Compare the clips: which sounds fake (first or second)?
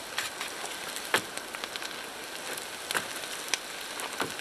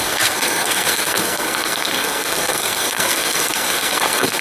second